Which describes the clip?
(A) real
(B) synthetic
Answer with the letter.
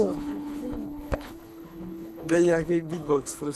B